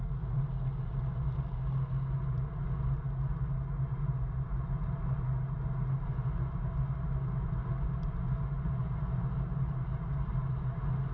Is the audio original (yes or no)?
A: yes